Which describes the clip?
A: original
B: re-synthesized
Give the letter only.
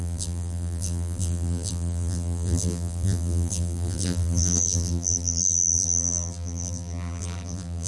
B